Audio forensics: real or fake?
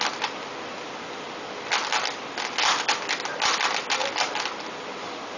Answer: real